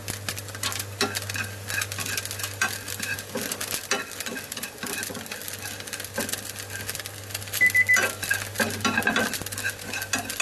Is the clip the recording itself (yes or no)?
yes